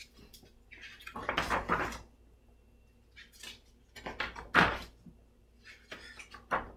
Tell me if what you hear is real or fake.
real